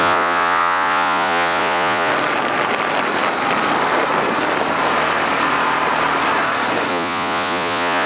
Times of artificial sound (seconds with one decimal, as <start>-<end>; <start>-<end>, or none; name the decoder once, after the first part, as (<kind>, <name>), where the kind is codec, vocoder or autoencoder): 0.0-2.1 (vocoder, Vocos); 6.9-8.1